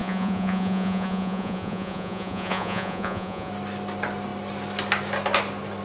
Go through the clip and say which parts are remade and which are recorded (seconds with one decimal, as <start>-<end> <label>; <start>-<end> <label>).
0.0-3.5 remade; 3.5-5.8 recorded